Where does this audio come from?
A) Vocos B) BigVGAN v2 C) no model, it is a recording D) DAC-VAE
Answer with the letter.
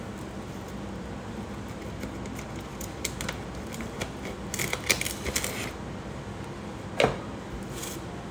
C